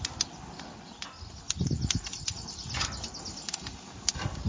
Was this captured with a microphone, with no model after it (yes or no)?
yes